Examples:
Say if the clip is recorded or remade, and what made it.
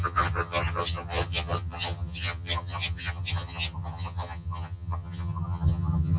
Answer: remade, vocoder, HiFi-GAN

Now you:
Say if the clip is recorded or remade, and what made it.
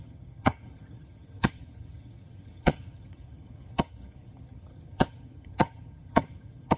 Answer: remade, vocoder, HiFi-GAN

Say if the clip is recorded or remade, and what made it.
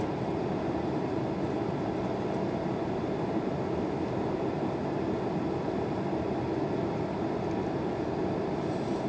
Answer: recorded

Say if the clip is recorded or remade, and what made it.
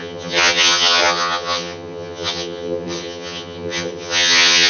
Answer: remade, vocoder, HiFi-GAN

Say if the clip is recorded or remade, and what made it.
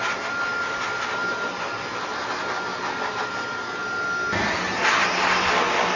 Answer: recorded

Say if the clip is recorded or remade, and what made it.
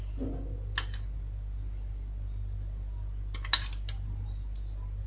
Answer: recorded